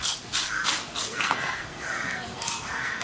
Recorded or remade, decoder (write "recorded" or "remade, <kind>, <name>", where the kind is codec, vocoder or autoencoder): remade, codec, SNAC